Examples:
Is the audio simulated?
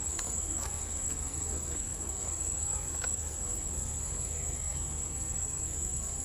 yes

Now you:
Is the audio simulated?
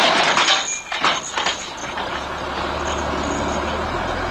no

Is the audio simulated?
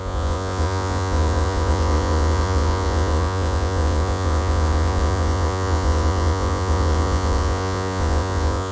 yes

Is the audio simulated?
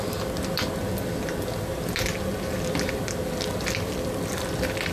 no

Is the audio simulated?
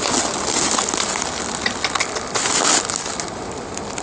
no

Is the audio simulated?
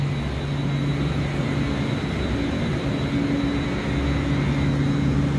no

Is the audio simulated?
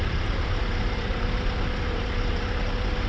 yes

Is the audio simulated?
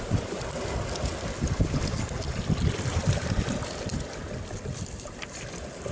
no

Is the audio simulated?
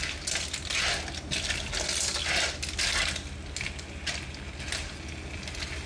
no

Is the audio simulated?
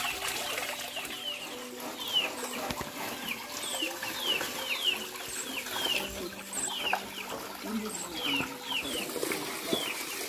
no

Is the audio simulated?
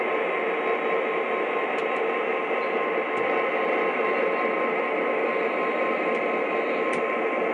no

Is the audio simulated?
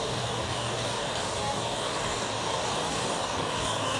yes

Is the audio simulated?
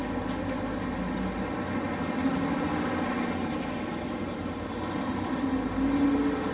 no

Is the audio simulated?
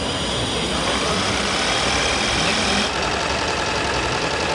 no